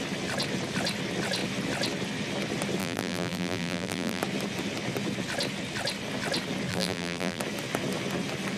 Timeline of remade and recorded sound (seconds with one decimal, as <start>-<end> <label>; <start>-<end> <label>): 0.0-2.8 recorded; 2.8-4.2 remade; 4.2-6.7 recorded; 6.7-7.4 remade; 7.4-8.6 recorded